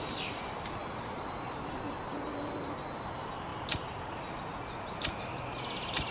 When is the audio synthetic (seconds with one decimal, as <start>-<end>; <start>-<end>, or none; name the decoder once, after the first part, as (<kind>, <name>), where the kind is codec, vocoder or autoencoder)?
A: 0.8-1.6 (vocoder, BigVGAN v2); 3.5-4.1